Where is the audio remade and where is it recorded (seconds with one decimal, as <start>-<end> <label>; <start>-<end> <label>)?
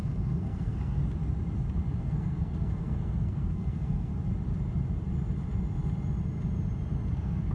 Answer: 0.0-1.0 remade; 1.0-2.0 recorded; 2.0-4.1 remade; 4.1-7.1 recorded; 7.1-7.5 remade